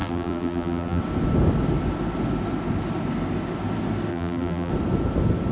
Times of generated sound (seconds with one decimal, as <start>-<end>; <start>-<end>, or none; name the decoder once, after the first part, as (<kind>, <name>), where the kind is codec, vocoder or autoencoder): 0.0-1.0 (vocoder, BigVGAN v2); 4.1-4.7